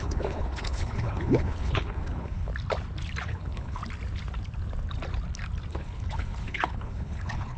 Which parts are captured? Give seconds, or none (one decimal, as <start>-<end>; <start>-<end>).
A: 2.5-3.2; 3.8-5.7